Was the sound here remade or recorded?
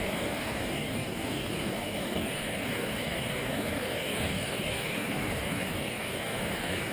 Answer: remade